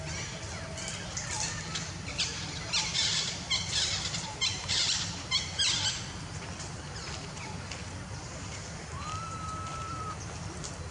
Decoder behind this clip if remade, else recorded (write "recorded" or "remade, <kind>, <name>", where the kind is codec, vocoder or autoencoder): recorded